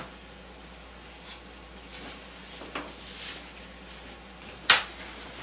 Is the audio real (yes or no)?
yes